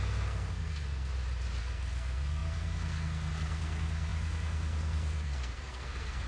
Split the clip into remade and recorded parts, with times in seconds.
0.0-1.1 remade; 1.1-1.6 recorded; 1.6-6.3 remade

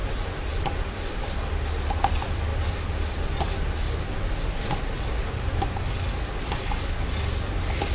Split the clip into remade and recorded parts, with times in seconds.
0.0-7.9 recorded

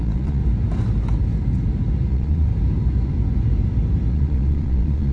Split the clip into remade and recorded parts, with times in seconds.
0.0-0.4 remade; 0.4-2.1 recorded; 2.1-2.5 remade; 2.5-4.1 recorded; 4.1-5.1 remade

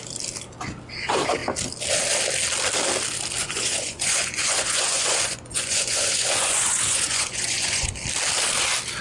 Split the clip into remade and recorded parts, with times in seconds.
0.0-3.4 recorded; 3.4-7.9 remade; 7.9-9.0 recorded